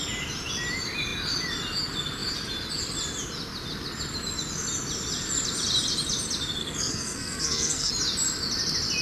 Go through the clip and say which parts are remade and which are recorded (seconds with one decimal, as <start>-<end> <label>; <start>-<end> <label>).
0.0-6.6 recorded; 6.6-7.9 remade; 7.9-9.0 recorded